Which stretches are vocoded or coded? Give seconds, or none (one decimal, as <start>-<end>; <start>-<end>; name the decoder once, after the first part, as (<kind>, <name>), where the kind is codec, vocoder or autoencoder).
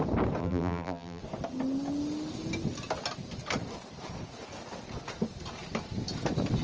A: 0.4-1.2 (vocoder, BigVGAN v2)